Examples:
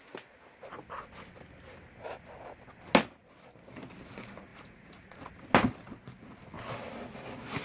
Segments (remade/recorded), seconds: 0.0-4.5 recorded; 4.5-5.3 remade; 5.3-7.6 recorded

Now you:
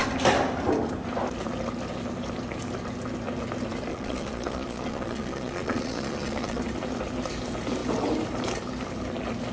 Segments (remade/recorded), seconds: 0.0-3.9 recorded; 3.9-6.6 remade; 6.6-9.5 recorded